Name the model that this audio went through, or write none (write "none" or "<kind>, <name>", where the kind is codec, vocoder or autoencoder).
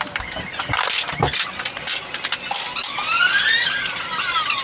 none